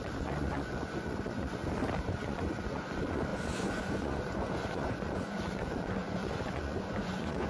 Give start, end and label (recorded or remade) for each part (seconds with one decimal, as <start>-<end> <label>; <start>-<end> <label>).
0.0-1.6 remade; 1.6-2.1 recorded; 2.1-7.5 remade